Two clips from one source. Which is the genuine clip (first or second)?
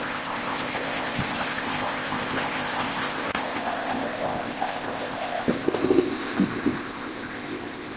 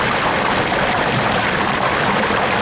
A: second